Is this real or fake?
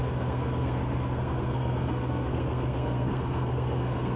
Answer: fake